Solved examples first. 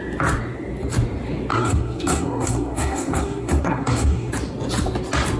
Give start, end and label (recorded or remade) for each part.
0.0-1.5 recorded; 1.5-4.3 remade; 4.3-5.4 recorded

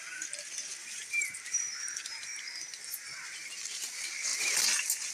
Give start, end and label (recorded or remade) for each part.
0.0-0.8 recorded; 0.8-3.9 remade; 3.9-5.1 recorded

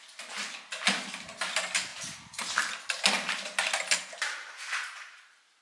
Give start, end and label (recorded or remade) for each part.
0.0-5.6 recorded

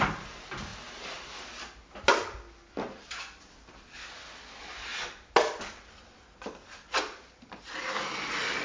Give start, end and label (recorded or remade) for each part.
0.0-8.6 recorded

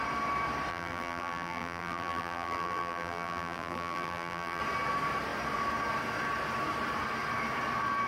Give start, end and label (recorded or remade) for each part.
0.0-0.7 recorded; 0.7-4.6 remade; 4.6-8.1 recorded

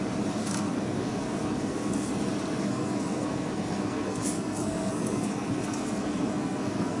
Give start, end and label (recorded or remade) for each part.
0.0-0.4 recorded; 0.4-2.1 remade; 2.1-2.6 recorded; 2.6-7.0 remade

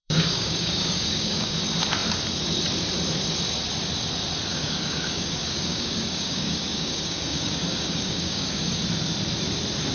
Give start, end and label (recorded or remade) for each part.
0.0-1.6 remade; 1.6-4.5 recorded; 4.5-8.8 remade; 8.8-9.9 recorded

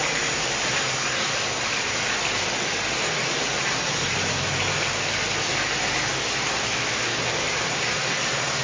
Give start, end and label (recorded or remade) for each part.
0.0-8.6 recorded